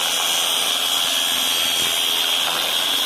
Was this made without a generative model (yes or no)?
yes